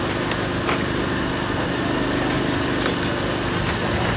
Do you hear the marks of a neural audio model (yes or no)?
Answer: no